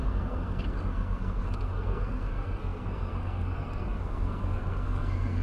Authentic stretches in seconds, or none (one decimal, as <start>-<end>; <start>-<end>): none